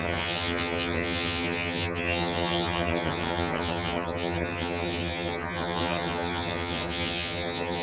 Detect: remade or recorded remade